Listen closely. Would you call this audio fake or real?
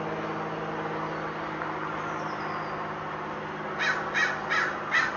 real